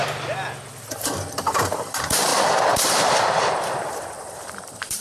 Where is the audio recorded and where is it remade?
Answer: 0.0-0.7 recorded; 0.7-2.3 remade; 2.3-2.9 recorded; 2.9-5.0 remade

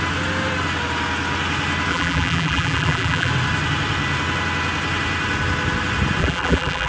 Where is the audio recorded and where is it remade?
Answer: 0.0-1.9 recorded; 1.9-3.3 remade; 3.3-6.2 recorded; 6.2-6.9 remade

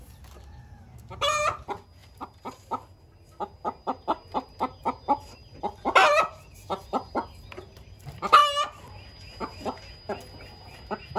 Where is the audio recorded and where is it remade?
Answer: 0.0-11.2 recorded

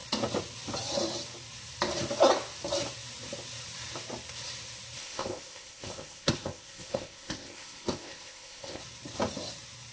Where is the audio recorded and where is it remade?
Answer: 0.0-5.0 recorded; 5.0-8.8 remade; 8.8-9.9 recorded

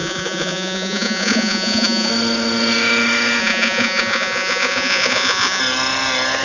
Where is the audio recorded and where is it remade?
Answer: 0.0-2.1 remade; 2.1-3.4 recorded; 3.4-5.6 remade; 5.6-6.4 recorded

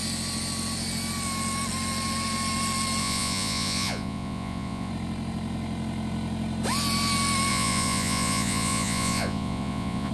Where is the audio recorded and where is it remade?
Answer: 0.0-3.0 recorded; 3.0-4.9 remade; 4.9-7.5 recorded; 7.5-10.1 remade